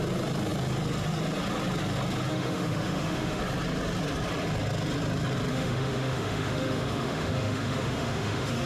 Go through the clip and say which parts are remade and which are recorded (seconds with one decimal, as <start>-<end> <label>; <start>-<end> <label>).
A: 0.0-2.3 recorded; 2.3-3.4 remade; 3.4-5.5 recorded; 5.5-8.7 remade